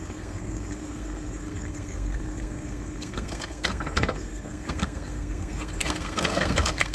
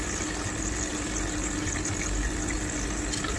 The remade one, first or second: first